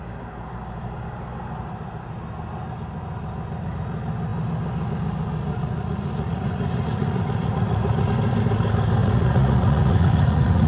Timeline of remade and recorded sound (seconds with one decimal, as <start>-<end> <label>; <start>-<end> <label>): 0.0-5.5 recorded; 5.5-8.1 remade; 8.1-9.0 recorded; 9.0-10.7 remade